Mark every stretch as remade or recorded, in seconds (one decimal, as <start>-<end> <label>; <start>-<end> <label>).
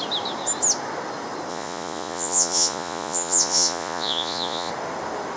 0.0-1.5 recorded; 1.5-4.7 remade; 4.7-5.4 recorded